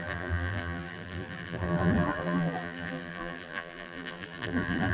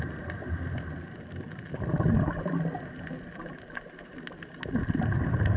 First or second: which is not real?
first